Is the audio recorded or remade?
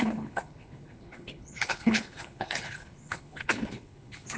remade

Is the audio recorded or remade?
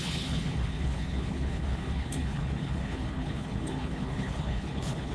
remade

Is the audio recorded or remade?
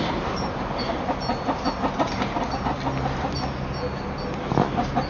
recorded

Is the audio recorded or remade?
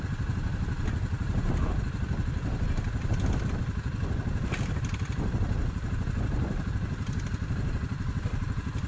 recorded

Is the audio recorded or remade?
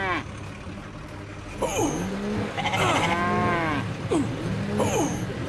recorded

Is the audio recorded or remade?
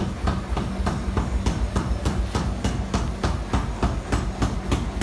recorded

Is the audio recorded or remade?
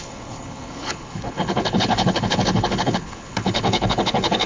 remade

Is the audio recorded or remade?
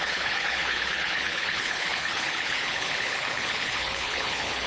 remade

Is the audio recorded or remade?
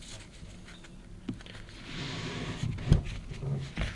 recorded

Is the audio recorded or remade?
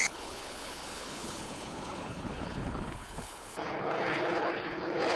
remade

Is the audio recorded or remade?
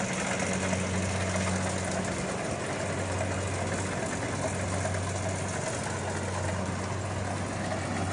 recorded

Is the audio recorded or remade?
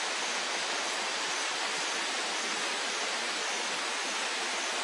recorded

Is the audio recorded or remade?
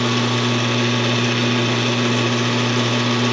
recorded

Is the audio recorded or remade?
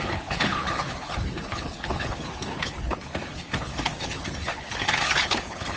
remade